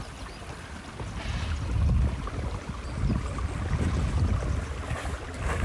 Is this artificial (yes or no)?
no